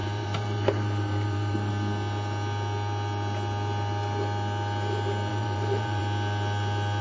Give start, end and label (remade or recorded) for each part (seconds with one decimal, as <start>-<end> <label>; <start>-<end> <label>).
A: 0.0-1.7 remade; 1.7-5.3 recorded; 5.3-6.0 remade; 6.0-7.0 recorded